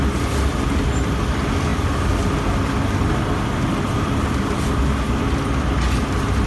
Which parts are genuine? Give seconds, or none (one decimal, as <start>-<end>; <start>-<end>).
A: 0.0-6.5